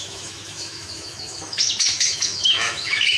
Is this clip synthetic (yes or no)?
yes